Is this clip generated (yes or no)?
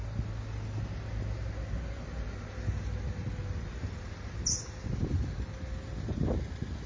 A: no